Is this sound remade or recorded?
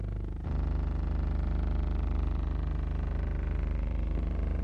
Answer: remade